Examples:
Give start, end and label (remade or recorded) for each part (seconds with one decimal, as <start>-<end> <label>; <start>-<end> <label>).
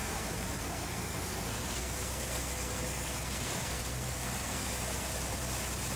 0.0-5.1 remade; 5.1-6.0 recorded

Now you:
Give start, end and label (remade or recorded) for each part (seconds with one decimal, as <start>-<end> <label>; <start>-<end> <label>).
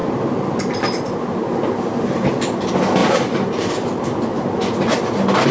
0.0-3.0 recorded; 3.0-3.7 remade; 3.7-5.5 recorded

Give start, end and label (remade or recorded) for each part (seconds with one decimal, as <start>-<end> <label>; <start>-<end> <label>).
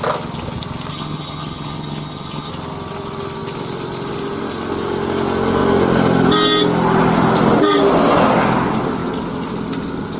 0.0-0.9 recorded; 0.9-2.5 remade; 2.5-10.2 recorded